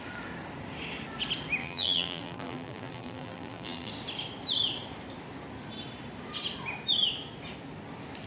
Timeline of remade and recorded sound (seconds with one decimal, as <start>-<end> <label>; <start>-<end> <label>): 0.0-1.6 recorded; 1.6-3.9 remade; 3.9-8.3 recorded